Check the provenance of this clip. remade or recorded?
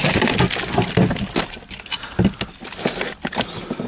recorded